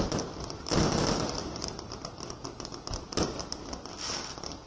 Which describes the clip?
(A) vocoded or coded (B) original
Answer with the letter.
B